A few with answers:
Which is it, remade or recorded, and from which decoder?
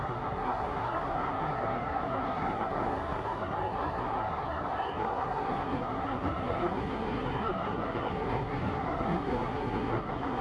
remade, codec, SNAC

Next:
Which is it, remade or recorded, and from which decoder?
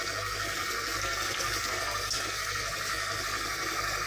remade, codec, SNAC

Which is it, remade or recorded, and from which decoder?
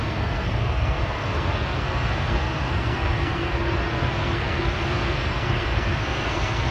remade, codec, SNAC